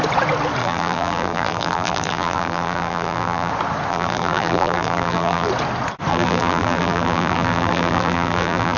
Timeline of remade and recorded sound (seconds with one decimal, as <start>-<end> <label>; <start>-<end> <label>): 0.0-0.6 recorded; 0.6-3.5 remade; 3.5-3.9 recorded; 3.9-5.5 remade; 5.5-6.1 recorded; 6.1-8.8 remade